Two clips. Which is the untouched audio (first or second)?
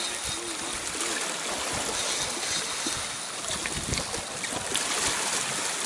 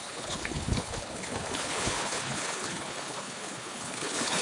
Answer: first